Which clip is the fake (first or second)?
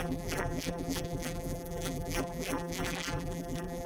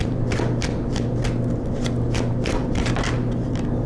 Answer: first